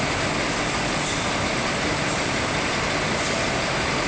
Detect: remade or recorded recorded